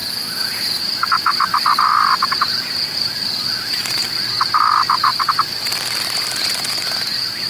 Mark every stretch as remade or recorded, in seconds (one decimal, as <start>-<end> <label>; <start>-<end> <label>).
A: 0.0-4.0 recorded; 4.0-4.6 remade; 4.6-5.1 recorded; 5.1-6.7 remade; 6.7-7.5 recorded